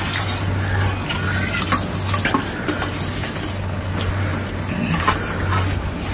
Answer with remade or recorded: recorded